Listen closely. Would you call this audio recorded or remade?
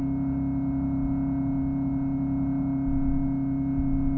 recorded